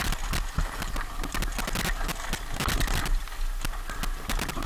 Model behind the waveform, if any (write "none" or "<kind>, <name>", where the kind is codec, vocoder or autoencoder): none